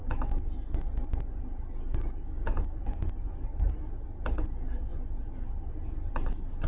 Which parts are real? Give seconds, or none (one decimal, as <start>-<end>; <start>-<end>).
0.0-6.7